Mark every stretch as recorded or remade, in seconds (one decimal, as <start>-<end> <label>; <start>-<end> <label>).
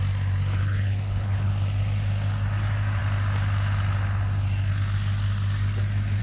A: 0.0-0.5 recorded; 0.5-1.5 remade; 1.5-6.2 recorded